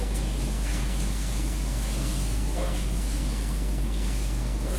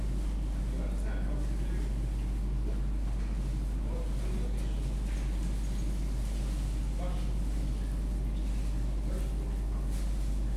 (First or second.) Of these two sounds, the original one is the second